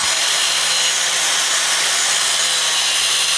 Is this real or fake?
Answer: real